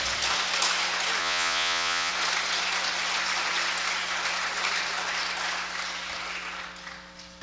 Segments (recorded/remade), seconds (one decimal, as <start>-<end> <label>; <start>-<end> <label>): 0.0-1.2 recorded; 1.2-2.1 remade; 2.1-7.4 recorded